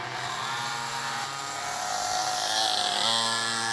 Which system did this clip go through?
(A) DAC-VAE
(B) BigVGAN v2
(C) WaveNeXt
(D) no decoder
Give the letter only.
D